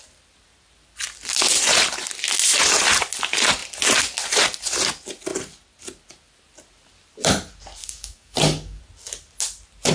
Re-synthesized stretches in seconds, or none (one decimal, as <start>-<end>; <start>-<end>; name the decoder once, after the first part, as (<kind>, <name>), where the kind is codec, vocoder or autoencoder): 7.8-8.8 (codec, DAC)